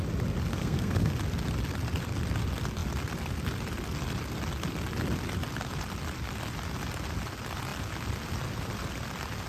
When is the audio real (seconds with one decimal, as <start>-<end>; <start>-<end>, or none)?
0.0-0.5; 1.1-9.5